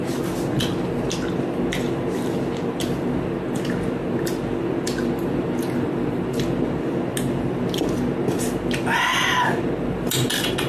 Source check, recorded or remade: recorded